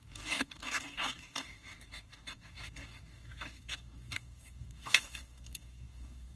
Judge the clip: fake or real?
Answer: fake